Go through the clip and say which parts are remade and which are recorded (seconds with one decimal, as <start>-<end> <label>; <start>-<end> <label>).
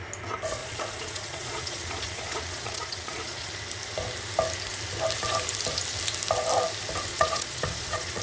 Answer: 0.0-0.6 recorded; 0.6-3.5 remade; 3.5-7.1 recorded; 7.1-8.2 remade